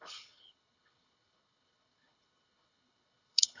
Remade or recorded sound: remade